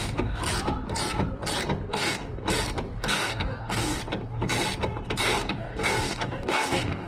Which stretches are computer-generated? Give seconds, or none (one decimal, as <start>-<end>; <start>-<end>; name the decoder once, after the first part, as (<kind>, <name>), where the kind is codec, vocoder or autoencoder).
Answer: 0.0-0.4 (codec, DAC); 1.9-2.3; 3.0-4.0; 5.2-7.1